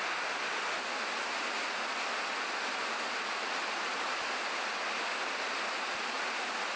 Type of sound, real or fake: real